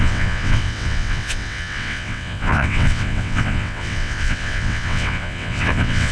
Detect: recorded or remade remade